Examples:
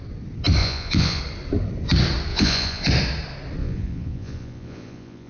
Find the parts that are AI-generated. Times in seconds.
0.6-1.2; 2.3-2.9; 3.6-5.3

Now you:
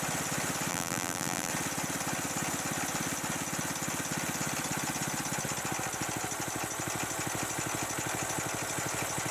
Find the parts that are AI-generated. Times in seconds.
0.7-1.5

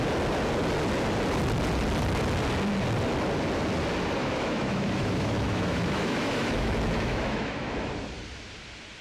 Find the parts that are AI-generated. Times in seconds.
4.2-7.9

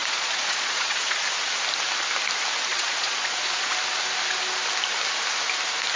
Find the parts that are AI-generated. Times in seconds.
0.0-1.2; 2.7-3.7

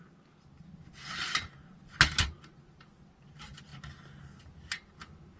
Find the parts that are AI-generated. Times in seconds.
none